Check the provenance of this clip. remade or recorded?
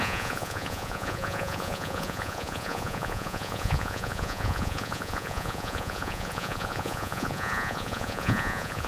remade